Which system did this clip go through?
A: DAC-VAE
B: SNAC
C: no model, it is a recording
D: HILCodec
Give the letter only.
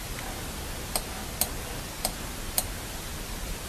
C